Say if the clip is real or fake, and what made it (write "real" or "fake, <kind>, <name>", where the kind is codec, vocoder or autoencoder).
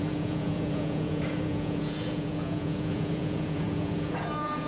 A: fake, vocoder, Vocos